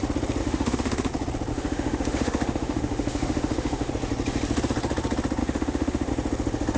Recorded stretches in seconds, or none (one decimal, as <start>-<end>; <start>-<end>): 0.0-0.4; 1.1-1.5; 3.9-5.4; 6.1-6.8